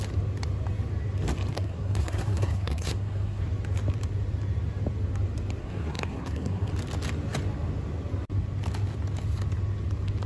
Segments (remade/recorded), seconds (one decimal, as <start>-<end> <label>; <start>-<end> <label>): 0.0-1.5 recorded; 1.5-3.4 remade; 3.4-5.6 recorded; 5.6-6.7 remade; 6.7-10.3 recorded